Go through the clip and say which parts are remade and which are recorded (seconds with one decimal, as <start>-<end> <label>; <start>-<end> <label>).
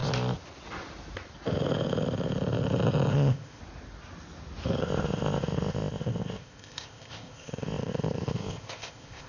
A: 0.0-3.1 recorded; 3.1-3.6 remade; 3.6-4.8 recorded; 4.8-9.3 remade